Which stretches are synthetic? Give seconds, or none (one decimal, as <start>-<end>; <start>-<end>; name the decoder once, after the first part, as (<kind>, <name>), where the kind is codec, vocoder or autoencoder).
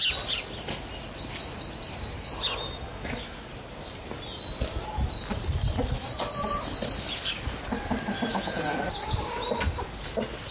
8.3-8.8 (vocoder, Vocos)